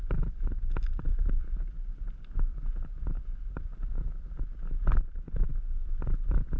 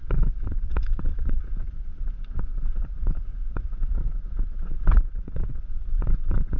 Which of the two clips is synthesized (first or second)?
second